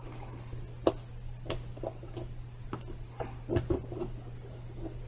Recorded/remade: recorded